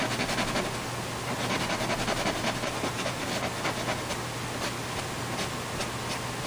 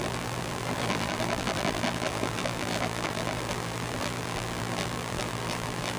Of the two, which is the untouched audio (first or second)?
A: first